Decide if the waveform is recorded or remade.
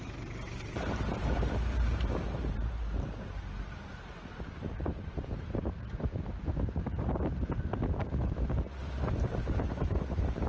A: remade